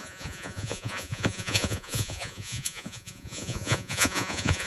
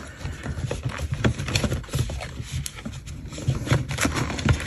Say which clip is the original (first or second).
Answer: second